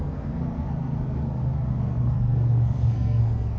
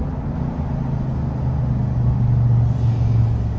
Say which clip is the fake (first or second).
first